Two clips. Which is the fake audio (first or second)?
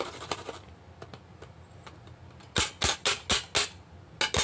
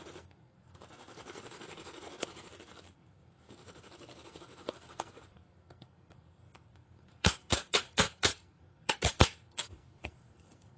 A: second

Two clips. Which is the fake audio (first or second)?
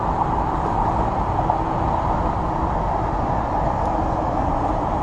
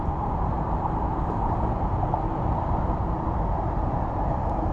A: second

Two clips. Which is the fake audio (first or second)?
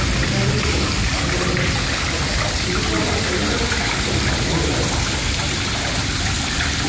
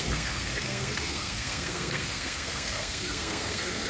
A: second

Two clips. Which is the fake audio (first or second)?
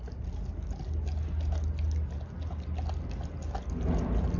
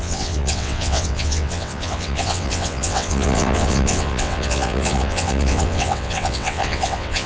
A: second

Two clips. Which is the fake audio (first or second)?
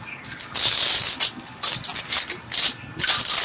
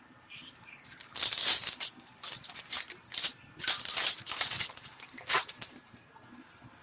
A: second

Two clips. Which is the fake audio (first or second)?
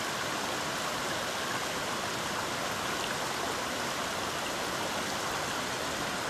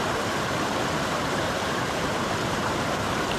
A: second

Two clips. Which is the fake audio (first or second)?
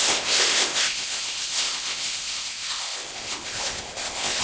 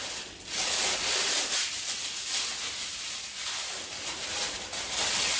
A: first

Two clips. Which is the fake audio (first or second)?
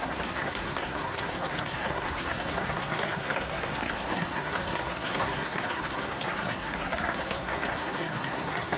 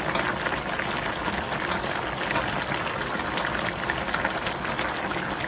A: first